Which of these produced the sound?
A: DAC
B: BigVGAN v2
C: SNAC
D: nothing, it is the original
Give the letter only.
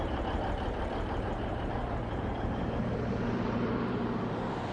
B